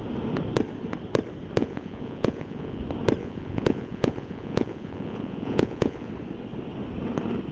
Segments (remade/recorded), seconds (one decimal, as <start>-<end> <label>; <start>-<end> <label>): 0.0-1.6 recorded; 1.6-2.8 remade; 2.8-3.2 recorded; 3.2-6.1 remade; 6.1-7.5 recorded